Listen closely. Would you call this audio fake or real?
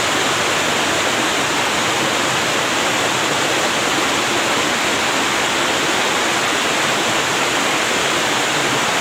real